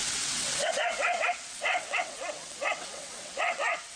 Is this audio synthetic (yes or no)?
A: yes